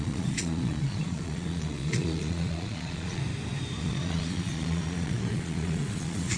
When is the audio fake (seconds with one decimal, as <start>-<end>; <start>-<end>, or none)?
0.0-3.2; 3.8-6.4